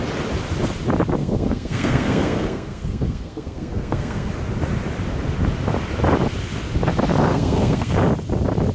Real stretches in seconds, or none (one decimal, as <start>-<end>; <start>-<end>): 0.0-1.2; 4.3-7.3; 7.9-8.7